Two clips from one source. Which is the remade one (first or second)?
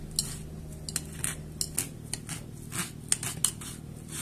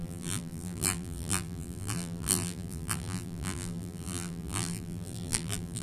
second